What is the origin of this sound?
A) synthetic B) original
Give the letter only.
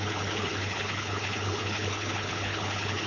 A